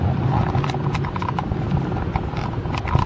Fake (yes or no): no